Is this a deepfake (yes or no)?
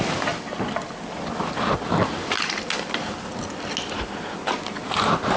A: no